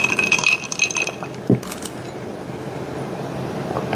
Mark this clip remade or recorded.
recorded